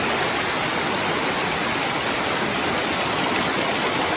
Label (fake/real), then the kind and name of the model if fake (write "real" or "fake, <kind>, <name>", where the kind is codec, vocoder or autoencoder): real